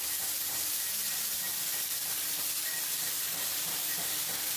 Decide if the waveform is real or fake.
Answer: real